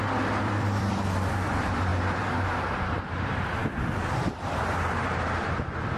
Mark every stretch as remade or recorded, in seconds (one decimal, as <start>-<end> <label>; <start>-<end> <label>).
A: 0.0-1.9 remade; 1.9-2.9 recorded; 2.9-3.6 remade; 3.6-4.2 recorded; 4.2-6.0 remade